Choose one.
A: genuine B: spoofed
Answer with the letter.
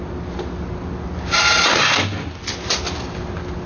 A